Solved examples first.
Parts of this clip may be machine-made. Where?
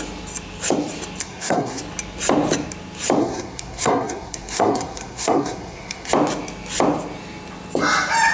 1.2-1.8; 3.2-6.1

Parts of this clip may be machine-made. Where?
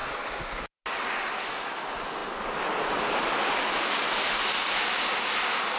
none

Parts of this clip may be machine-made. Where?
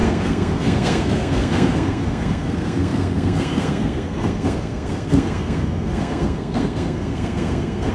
0.0-7.9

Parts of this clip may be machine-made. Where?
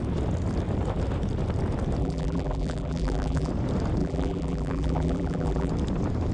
2.0-3.5; 4.0-5.7